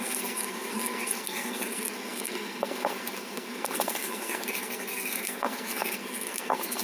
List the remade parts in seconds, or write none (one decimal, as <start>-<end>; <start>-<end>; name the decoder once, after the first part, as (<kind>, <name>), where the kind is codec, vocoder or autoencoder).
0.0-6.8 (codec, SNAC)